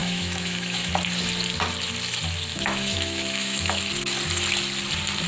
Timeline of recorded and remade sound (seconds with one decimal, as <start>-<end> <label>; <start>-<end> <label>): 0.0-0.9 remade; 0.9-2.5 recorded; 2.5-3.8 remade; 3.8-5.3 recorded